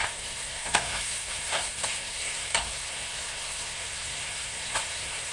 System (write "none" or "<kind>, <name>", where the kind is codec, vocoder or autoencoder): codec, SNAC